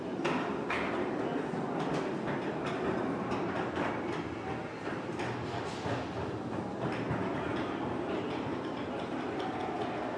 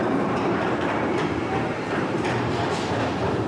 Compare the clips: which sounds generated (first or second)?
second